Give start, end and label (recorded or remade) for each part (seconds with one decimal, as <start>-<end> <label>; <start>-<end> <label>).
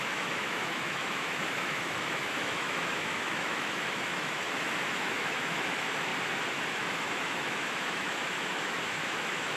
0.0-6.1 remade; 6.1-6.7 recorded; 6.7-9.6 remade